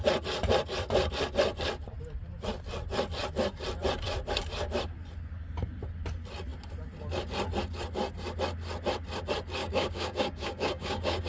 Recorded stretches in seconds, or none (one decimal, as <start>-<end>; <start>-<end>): 0.0-9.6